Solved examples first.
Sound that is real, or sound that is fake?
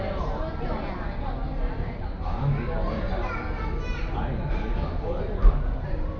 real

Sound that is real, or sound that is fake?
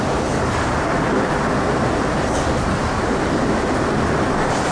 real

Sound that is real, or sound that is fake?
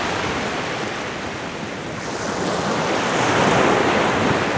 real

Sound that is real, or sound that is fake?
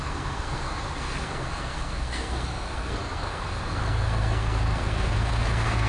fake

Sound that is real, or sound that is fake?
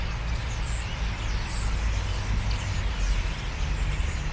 real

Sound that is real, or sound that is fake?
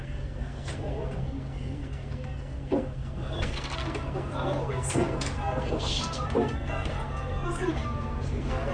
fake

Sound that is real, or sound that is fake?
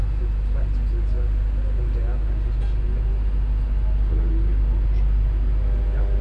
real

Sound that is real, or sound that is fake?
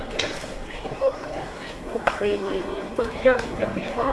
fake